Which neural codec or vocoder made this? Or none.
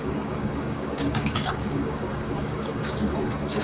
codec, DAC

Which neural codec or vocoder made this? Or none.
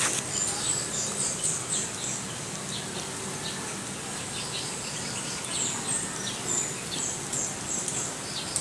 none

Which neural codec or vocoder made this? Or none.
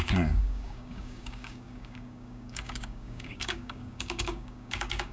codec, DAC